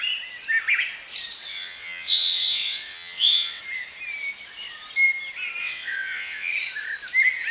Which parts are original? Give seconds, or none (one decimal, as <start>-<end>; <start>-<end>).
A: 0.0-1.5; 3.6-5.6; 6.5-7.5